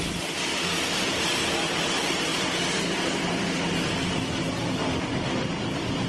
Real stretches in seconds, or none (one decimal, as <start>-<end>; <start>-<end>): 0.0-6.1